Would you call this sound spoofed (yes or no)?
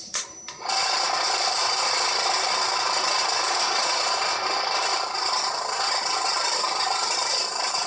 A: yes